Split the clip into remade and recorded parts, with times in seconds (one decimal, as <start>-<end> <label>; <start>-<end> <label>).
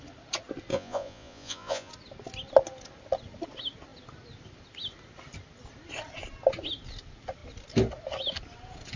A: 0.0-0.7 recorded; 0.7-1.9 remade; 1.9-9.0 recorded